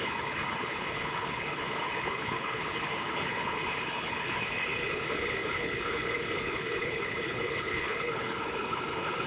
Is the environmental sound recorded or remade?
remade